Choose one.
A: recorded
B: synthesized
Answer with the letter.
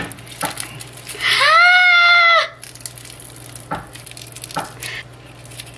A